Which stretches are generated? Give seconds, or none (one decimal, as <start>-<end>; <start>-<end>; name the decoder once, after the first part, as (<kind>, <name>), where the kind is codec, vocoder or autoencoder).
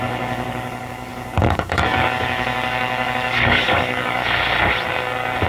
0.0-4.2 (codec, DAC)